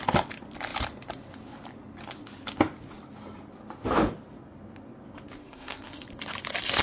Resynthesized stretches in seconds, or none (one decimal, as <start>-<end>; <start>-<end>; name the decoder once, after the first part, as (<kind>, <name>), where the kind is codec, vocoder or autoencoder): 5.4-6.1 (codec, SNAC)